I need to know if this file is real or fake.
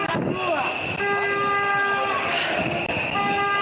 real